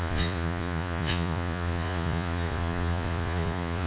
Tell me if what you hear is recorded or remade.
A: remade